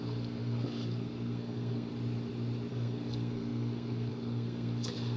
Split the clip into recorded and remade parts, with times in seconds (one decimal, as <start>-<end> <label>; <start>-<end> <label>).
0.0-1.9 remade; 1.9-2.7 recorded; 2.7-5.2 remade